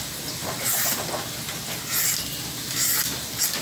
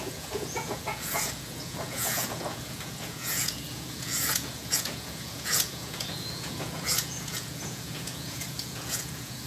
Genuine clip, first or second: first